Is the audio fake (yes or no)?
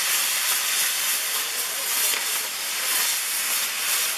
no